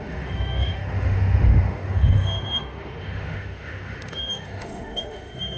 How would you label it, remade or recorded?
remade